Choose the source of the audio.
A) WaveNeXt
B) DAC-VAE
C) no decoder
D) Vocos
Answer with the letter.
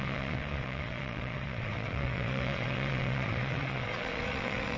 A